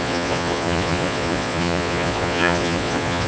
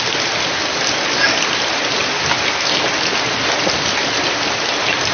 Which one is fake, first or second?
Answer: first